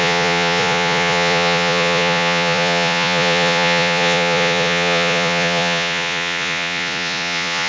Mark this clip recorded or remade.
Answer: remade